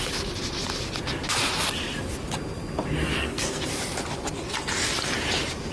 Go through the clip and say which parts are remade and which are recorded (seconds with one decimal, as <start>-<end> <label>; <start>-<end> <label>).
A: 0.0-3.0 recorded; 3.0-3.7 remade; 3.7-5.7 recorded